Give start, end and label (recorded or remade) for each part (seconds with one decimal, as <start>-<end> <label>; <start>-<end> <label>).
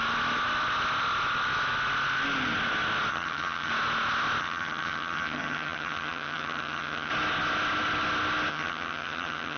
0.0-3.1 recorded; 3.1-3.7 remade; 3.7-4.4 recorded; 4.4-7.1 remade; 7.1-8.5 recorded; 8.5-9.6 remade